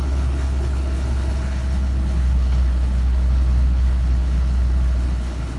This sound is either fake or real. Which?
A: fake